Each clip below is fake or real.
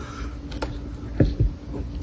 real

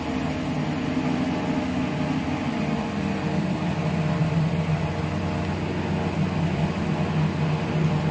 real